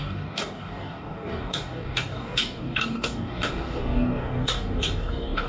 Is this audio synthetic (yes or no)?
yes